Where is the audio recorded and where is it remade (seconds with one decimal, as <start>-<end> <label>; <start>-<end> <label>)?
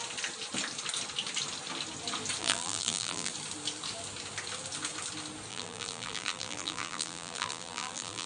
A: 0.0-2.4 recorded; 2.4-3.3 remade; 3.3-5.5 recorded; 5.5-8.3 remade